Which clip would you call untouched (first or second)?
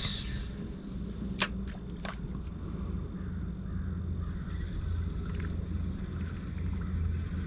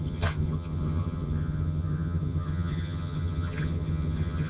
first